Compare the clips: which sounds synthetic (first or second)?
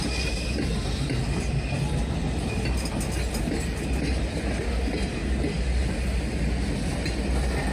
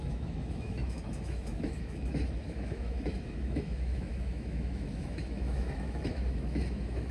second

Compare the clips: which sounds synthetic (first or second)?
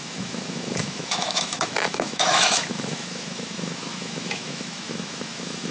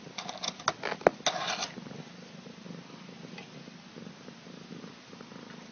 first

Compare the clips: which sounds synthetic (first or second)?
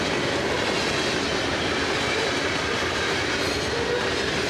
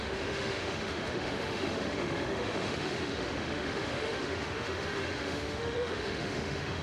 second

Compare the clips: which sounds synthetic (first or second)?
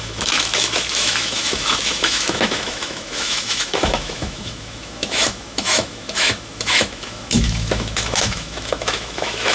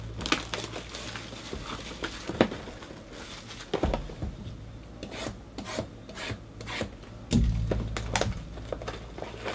first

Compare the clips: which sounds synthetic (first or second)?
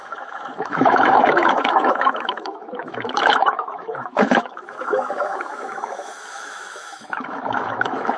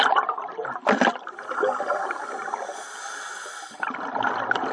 first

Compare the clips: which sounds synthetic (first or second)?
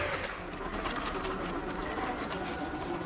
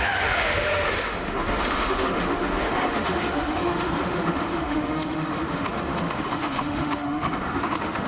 second